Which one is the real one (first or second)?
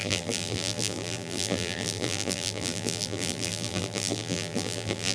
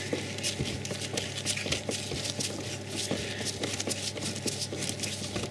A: second